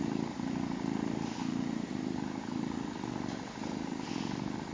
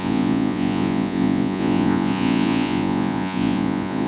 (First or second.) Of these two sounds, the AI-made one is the second